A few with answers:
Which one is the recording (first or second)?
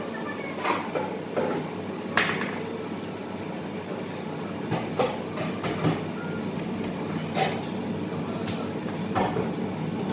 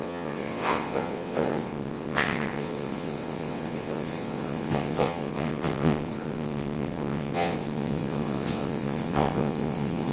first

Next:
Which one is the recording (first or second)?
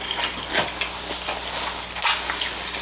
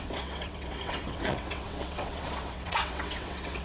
first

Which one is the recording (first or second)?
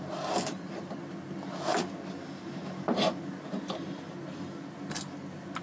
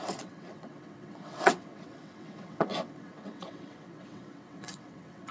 first